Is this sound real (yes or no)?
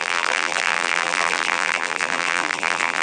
no